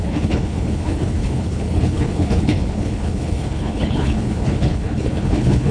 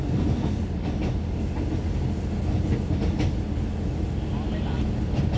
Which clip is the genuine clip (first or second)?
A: second